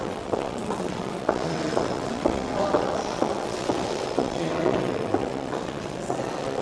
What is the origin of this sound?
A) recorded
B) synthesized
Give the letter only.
B